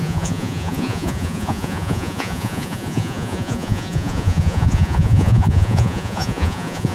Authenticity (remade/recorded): remade